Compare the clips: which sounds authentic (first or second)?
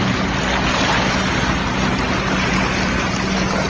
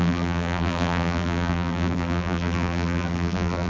first